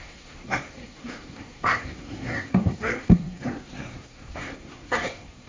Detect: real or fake fake